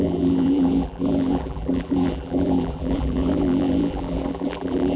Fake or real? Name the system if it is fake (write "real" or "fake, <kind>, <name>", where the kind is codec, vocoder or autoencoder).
fake, vocoder, BigVGAN v2